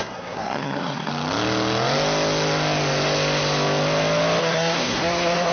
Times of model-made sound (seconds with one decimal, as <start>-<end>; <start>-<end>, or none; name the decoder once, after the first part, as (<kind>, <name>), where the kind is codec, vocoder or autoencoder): 0.0-1.1 (codec, SNAC); 4.4-5.5